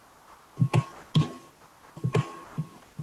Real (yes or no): yes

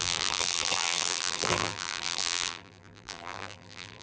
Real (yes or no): no